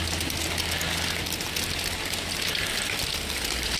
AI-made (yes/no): no